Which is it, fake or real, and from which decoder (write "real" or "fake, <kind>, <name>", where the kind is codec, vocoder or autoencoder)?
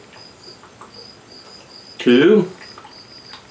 real